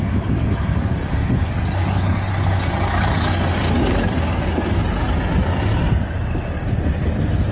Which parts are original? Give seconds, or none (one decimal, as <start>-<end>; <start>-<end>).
4.8-7.5